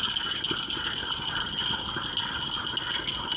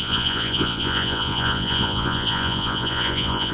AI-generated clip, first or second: second